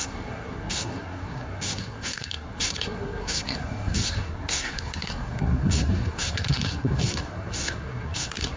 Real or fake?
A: fake